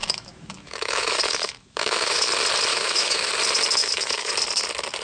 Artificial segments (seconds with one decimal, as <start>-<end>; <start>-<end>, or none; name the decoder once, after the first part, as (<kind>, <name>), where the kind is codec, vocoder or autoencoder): 0.0-2.3 (autoencoder, DAC-VAE); 2.7-3.3; 3.8-4.3